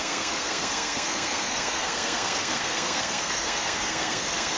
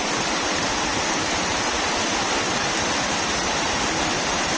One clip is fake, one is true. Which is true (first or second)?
second